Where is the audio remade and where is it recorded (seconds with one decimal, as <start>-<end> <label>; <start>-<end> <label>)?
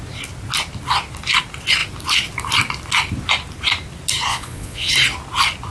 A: 0.0-4.3 recorded; 4.3-4.9 remade; 4.9-5.7 recorded